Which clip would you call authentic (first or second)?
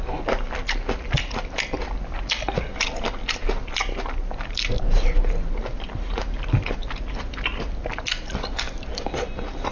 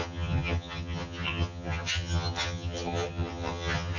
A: first